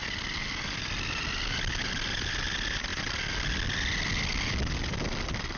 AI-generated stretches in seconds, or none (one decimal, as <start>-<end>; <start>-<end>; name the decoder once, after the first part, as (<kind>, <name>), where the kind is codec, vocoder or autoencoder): none